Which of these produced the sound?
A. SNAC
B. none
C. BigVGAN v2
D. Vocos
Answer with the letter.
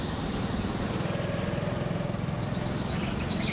B